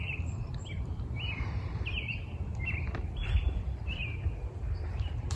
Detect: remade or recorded remade